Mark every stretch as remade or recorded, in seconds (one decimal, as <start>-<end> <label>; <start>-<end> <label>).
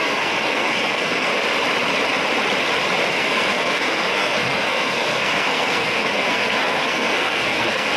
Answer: 0.0-1.3 remade; 1.3-3.1 recorded; 3.1-8.0 remade